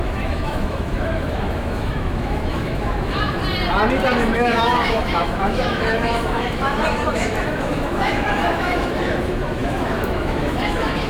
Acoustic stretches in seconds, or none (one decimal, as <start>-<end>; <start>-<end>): 3.4-4.1